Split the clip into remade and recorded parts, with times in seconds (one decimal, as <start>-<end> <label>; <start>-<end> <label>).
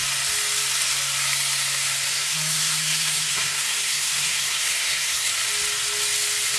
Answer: 0.0-2.1 recorded; 2.1-5.3 remade; 5.3-6.6 recorded